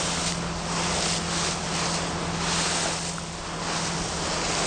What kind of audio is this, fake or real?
real